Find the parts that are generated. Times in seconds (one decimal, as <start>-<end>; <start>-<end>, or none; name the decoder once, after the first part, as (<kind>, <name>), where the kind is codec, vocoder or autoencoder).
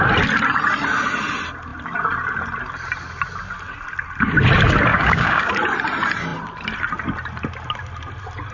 4.9-5.5 (codec, DAC)